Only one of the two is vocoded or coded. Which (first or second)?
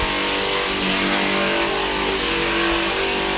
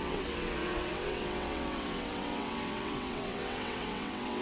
second